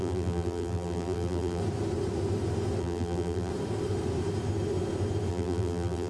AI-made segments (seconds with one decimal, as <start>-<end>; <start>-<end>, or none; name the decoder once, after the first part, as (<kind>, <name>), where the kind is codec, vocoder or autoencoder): 0.0-1.6 (vocoder, BigVGAN v2); 2.8-3.5; 5.3-6.1